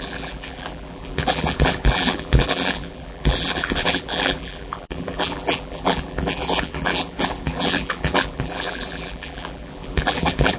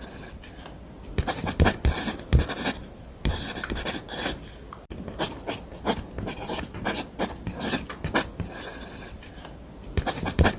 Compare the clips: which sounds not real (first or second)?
first